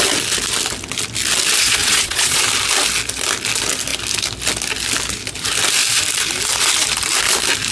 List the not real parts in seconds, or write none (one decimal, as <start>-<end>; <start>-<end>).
1.8-2.4